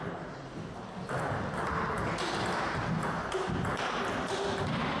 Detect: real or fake real